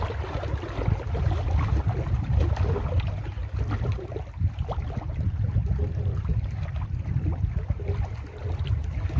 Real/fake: real